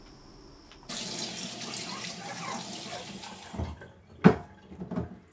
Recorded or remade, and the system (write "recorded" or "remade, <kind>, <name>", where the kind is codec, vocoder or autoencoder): recorded